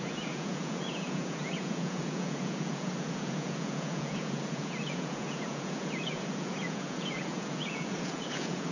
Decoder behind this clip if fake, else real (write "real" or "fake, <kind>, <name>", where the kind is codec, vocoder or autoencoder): fake, vocoder, Vocos